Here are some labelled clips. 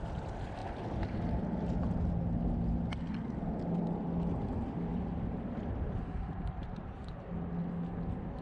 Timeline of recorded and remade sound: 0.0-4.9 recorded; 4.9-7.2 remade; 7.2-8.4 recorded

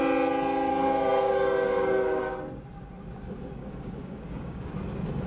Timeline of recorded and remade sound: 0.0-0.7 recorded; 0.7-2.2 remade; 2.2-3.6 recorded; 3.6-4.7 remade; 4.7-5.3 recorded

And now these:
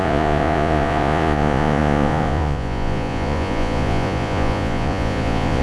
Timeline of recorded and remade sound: 0.0-5.6 remade